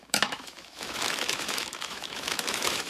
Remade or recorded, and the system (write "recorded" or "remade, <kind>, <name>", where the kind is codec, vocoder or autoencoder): remade, autoencoder, DAC-VAE